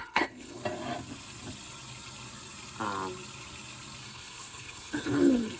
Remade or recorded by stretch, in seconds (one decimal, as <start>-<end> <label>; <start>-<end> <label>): 0.0-0.6 remade; 0.6-4.0 recorded; 4.0-5.6 remade